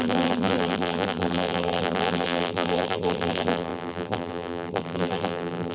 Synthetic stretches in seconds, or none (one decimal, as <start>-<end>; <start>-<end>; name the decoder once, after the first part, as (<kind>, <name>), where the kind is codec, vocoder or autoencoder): 0.0-5.7 (vocoder, BigVGAN v2)